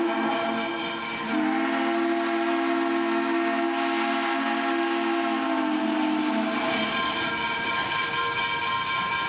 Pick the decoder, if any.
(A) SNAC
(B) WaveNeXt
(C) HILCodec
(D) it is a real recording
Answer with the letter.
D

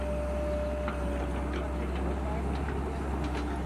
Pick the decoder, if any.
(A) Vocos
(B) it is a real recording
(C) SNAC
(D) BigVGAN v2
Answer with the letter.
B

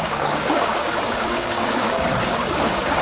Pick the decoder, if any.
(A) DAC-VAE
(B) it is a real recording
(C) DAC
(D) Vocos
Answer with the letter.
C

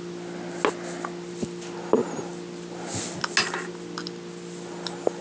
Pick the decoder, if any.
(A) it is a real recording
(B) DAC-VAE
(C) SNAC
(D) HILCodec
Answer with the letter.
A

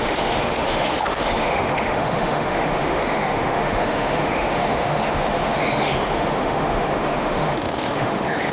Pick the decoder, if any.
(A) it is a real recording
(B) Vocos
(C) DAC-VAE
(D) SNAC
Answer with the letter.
C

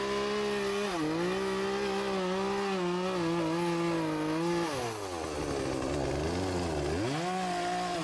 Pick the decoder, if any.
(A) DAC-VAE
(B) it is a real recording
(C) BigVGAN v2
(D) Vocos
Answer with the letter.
B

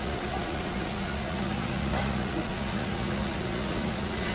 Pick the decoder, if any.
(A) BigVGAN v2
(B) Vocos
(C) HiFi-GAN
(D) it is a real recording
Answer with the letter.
B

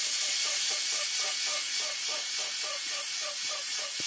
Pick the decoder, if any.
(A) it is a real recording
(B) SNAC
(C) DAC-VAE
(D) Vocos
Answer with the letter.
D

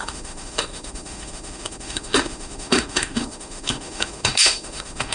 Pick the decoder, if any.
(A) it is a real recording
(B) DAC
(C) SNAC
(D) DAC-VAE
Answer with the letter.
D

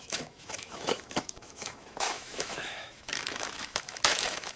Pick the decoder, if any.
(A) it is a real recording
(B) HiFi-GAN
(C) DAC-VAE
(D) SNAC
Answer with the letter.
C